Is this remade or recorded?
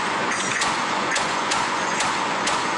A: remade